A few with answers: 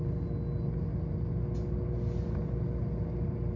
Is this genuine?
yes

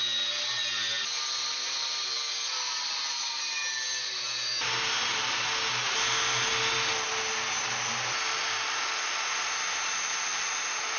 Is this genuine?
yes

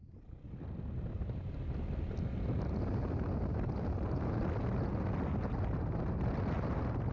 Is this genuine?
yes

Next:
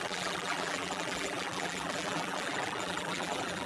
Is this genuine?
no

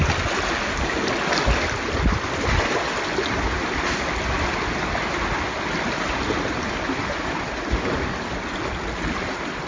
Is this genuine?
yes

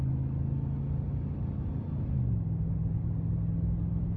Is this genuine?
yes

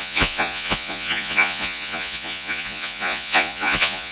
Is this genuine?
no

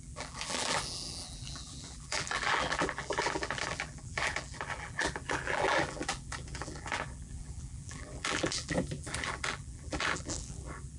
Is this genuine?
no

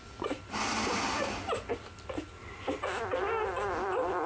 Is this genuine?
yes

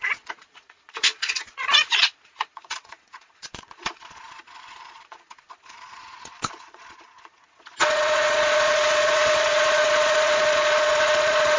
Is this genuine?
no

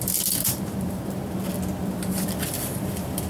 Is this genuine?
no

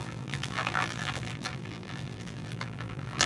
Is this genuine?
no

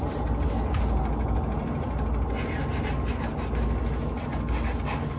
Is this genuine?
yes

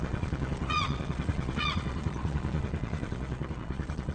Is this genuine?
no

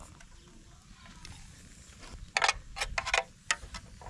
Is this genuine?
yes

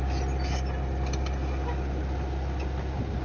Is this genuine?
yes